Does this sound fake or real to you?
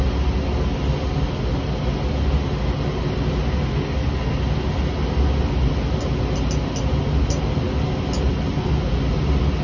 real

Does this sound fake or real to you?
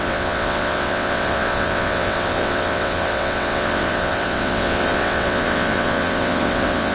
fake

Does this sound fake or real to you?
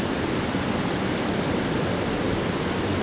real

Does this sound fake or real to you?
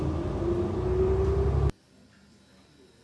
real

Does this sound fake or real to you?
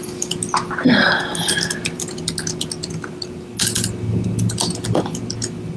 real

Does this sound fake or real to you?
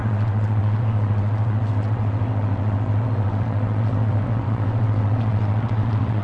fake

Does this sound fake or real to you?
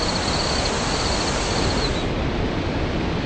real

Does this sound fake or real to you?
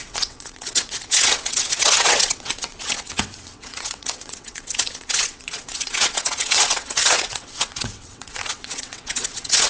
fake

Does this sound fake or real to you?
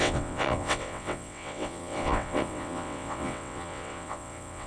fake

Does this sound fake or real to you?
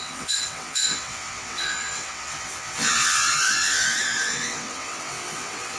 fake